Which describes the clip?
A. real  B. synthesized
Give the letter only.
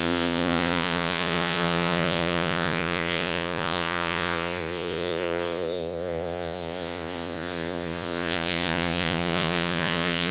B